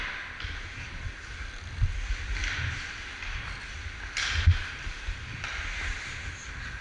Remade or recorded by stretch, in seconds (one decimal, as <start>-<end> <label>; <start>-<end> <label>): 0.0-6.8 recorded